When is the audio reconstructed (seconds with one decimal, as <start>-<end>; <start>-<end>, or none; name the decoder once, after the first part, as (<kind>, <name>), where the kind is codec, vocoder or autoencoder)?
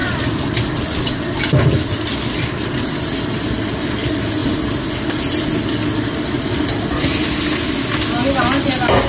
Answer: none